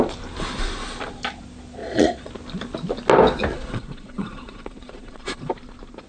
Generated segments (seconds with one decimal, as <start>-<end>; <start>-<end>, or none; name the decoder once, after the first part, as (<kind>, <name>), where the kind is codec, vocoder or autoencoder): 1.8-2.3 (vocoder, Vocos); 3.5-5.5